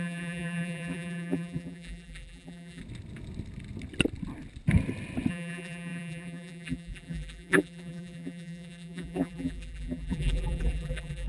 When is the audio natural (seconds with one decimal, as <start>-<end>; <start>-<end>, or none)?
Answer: 2.8-5.3